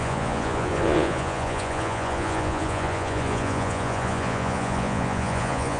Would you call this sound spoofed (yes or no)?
yes